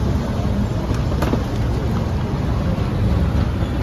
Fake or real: real